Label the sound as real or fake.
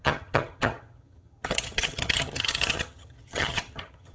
fake